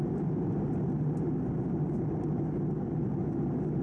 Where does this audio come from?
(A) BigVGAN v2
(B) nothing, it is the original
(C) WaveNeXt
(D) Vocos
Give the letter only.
B